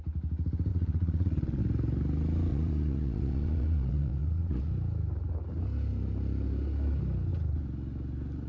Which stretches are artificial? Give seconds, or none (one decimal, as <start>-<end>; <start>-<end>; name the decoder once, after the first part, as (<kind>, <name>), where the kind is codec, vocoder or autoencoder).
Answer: 0.7-1.6 (vocoder, Vocos); 2.5-4.7